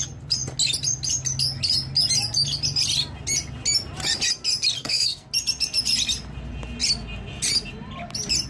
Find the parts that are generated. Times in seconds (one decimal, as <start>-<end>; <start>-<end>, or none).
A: 4.8-5.3